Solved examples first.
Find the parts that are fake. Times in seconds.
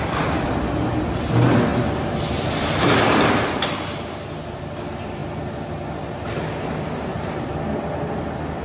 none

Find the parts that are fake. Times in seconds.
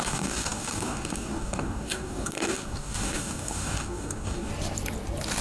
0.0-4.5 (codec, DAC)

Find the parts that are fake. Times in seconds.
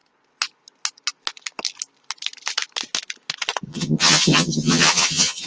3.7-5.5 (vocoder, HiFi-GAN)